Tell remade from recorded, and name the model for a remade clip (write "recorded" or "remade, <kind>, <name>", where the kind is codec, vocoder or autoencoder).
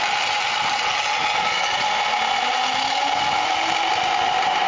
recorded